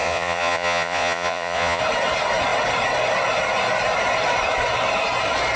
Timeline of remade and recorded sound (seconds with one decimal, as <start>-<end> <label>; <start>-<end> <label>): 0.0-1.8 remade; 1.8-5.6 recorded